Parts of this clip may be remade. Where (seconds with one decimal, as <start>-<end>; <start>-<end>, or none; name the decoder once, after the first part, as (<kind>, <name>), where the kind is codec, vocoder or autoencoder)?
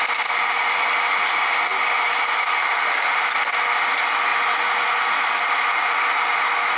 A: none